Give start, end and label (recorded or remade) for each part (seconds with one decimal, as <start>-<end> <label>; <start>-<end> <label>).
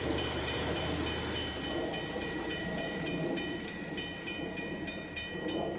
0.0-0.8 remade; 0.8-1.9 recorded; 1.9-5.8 remade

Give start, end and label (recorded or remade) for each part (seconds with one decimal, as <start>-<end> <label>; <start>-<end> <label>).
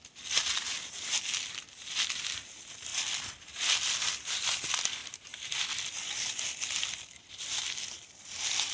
0.0-8.7 recorded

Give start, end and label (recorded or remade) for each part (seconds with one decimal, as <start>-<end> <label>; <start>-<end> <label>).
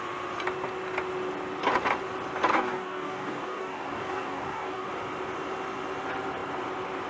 0.0-2.5 recorded; 2.5-4.9 remade; 4.9-7.1 recorded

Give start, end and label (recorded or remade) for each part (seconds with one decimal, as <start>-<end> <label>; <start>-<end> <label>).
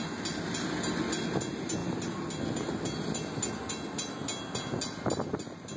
0.0-5.8 recorded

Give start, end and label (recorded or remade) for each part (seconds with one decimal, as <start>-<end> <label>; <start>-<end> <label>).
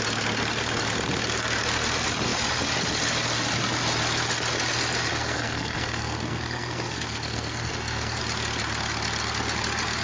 0.0-5.1 recorded; 5.1-8.2 remade; 8.2-10.0 recorded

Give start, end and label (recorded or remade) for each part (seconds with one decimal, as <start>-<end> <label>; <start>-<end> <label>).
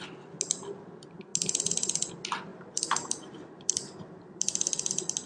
0.0-2.5 recorded; 2.5-5.3 remade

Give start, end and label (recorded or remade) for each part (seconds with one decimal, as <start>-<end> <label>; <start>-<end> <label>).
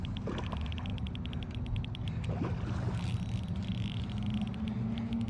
0.0-0.9 recorded; 0.9-4.1 remade; 4.1-5.3 recorded